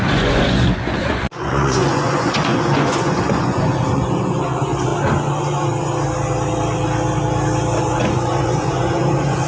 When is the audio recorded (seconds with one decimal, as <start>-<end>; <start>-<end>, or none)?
4.9-7.8